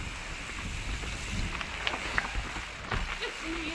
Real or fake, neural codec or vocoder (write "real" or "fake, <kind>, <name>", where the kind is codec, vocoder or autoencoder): real